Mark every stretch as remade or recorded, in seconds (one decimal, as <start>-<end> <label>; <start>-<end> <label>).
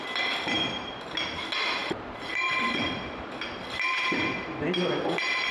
0.0-1.8 recorded; 1.8-5.1 remade; 5.1-5.5 recorded